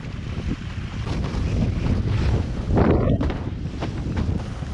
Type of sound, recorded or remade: recorded